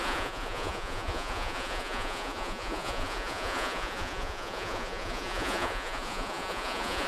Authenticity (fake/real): fake